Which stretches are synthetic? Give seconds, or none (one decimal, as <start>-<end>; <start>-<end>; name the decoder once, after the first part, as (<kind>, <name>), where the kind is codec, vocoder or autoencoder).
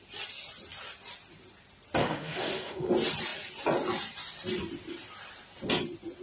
2.0-2.9 (autoencoder, DAC-VAE)